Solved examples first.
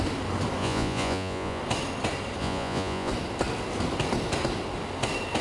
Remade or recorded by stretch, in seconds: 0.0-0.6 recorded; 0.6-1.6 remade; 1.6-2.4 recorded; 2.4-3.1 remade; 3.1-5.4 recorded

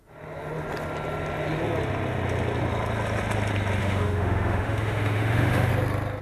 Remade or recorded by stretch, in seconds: 0.0-3.8 recorded; 3.8-5.7 remade; 5.7-6.2 recorded

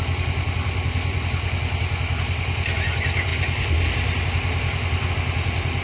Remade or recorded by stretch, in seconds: 0.0-5.8 recorded

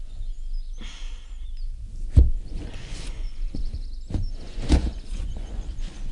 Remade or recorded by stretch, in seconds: 0.0-0.4 remade; 0.4-2.3 recorded; 2.3-3.7 remade; 3.7-4.4 recorded; 4.4-6.1 remade

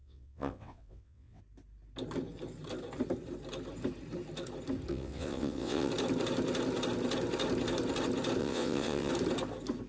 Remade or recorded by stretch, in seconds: 0.0-1.4 remade; 1.4-4.9 recorded; 4.9-5.9 remade; 5.9-8.4 recorded; 8.4-9.1 remade; 9.1-9.9 recorded

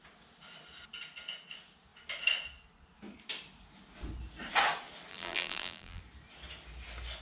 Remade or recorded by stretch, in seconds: 0.0-5.1 recorded; 5.1-6.0 remade; 6.0-7.2 recorded